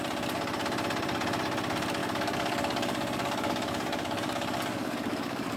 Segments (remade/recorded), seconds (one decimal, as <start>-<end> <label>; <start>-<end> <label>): 0.0-2.0 recorded; 2.0-5.6 remade